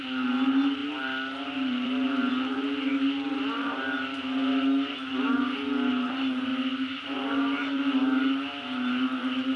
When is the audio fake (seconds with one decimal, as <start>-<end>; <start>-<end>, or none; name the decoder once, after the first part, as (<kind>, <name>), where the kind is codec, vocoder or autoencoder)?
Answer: 0.0-4.4 (vocoder, BigVGAN v2); 5.9-6.5; 7.0-9.6